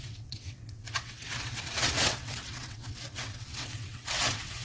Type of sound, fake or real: fake